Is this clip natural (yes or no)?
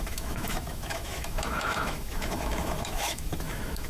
no